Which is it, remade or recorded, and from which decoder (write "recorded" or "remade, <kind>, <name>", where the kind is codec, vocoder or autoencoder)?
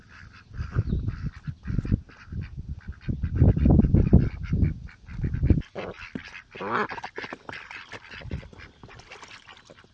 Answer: recorded